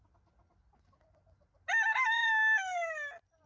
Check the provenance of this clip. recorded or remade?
recorded